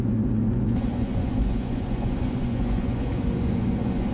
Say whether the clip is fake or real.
fake